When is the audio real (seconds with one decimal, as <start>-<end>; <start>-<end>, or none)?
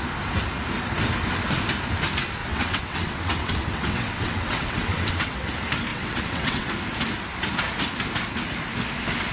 0.0-2.4; 5.5-5.9; 6.7-9.3